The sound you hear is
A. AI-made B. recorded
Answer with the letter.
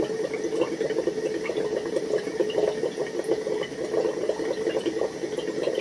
B